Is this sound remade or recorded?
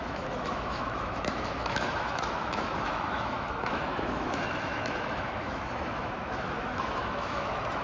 remade